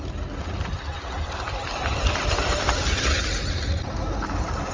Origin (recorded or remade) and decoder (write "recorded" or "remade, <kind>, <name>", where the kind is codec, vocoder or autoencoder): recorded